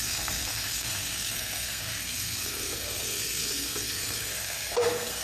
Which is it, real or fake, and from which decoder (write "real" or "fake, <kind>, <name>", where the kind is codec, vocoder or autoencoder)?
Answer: fake, codec, SNAC